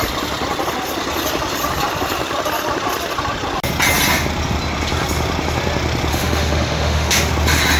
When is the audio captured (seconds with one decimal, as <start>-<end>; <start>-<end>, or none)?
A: 0.0-6.1; 7.3-7.8